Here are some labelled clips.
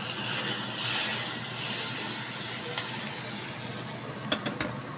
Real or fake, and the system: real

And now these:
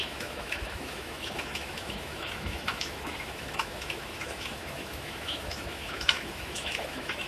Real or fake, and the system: fake, autoencoder, DAC-VAE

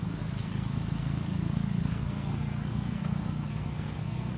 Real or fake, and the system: fake, codec, SNAC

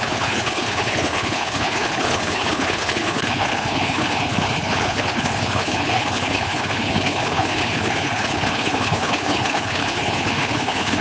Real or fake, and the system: fake, codec, HILCodec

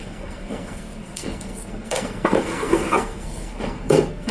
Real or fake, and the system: fake, codec, SNAC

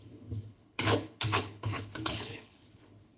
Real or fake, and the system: fake, codec, HILCodec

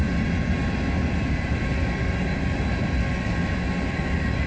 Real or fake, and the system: real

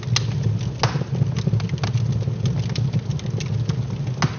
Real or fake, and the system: real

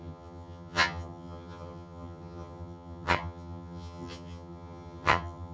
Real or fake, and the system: fake, vocoder, HiFi-GAN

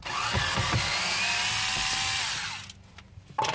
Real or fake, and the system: real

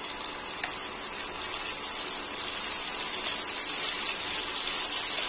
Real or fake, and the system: real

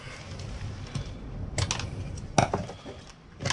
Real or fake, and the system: real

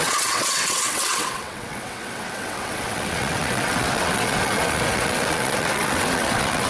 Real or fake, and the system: fake, vocoder, WaveNeXt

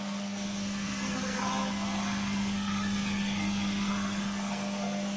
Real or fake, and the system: fake, codec, SNAC